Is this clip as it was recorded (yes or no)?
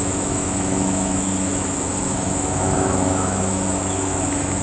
no